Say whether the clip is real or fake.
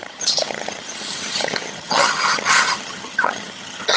fake